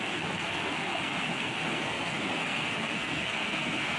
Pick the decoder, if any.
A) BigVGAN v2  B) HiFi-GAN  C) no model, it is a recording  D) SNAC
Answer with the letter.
D